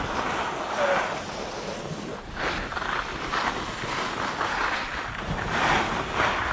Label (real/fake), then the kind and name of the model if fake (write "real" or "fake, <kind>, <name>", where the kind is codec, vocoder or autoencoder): real